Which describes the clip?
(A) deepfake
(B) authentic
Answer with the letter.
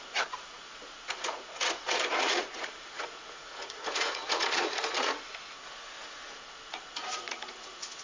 A